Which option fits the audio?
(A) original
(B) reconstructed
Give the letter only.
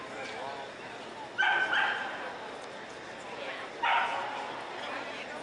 A